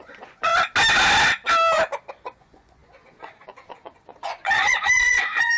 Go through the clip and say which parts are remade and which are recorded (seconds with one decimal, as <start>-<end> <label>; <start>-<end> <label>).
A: 0.0-0.5 remade; 0.5-2.1 recorded; 2.1-5.6 remade